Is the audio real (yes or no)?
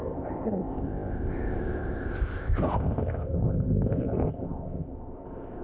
no